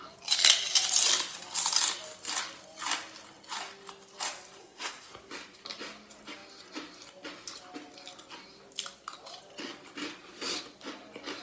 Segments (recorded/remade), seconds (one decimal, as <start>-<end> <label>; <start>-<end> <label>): 0.0-4.6 recorded; 4.6-5.1 remade; 5.1-11.4 recorded